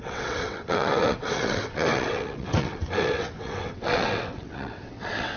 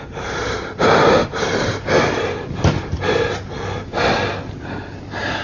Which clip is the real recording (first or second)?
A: second